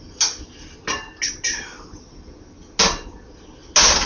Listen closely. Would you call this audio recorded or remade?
recorded